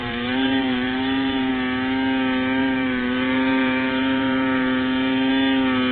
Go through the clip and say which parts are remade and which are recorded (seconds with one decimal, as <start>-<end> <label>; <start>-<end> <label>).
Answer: 0.0-1.5 remade; 1.5-2.6 recorded; 2.6-5.3 remade; 5.3-5.9 recorded

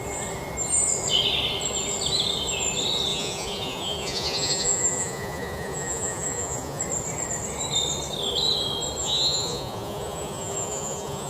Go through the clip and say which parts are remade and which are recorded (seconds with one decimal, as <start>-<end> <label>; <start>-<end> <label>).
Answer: 0.0-3.1 recorded; 3.1-6.8 remade; 6.8-9.0 recorded; 9.0-11.3 remade

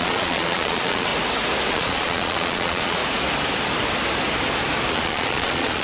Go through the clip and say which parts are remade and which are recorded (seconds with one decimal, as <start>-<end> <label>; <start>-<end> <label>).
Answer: 0.0-1.1 remade; 1.1-1.7 recorded; 1.7-3.0 remade; 3.0-4.9 recorded; 4.9-5.8 remade

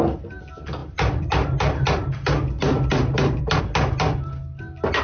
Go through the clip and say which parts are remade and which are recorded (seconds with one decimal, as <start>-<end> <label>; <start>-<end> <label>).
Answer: 0.0-0.8 recorded; 0.8-3.6 remade; 3.6-5.0 recorded

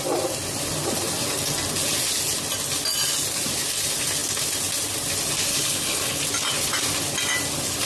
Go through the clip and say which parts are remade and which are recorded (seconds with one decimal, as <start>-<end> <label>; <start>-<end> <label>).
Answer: 0.0-5.5 recorded; 5.5-6.2 remade; 6.2-7.9 recorded